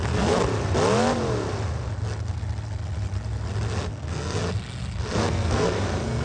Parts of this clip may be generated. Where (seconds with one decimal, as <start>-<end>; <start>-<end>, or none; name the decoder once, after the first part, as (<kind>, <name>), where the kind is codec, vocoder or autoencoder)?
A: 0.0-0.4 (codec, SNAC); 3.9-4.4; 5.1-6.2